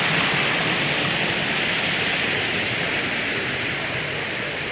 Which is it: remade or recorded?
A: recorded